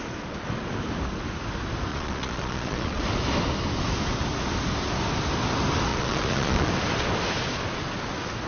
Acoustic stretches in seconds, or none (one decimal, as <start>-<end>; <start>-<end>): 0.0-1.9; 3.0-5.9; 6.7-8.5